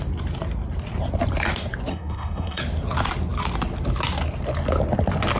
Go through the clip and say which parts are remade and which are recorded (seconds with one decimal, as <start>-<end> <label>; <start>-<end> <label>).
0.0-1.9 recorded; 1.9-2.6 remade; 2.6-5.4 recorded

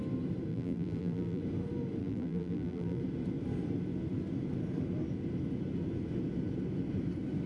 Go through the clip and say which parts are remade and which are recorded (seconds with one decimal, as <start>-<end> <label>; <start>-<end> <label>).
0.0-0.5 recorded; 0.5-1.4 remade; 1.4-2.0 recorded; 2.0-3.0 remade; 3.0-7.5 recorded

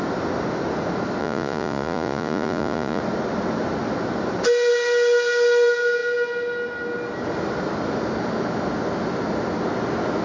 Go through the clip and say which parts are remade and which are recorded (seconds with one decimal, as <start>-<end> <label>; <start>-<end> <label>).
0.0-1.2 recorded; 1.2-3.0 remade; 3.0-10.2 recorded